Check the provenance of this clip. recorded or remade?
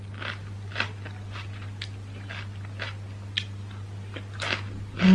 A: recorded